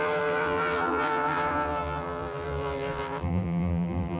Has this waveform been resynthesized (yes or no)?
yes